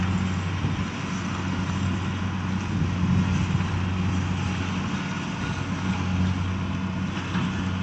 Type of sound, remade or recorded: recorded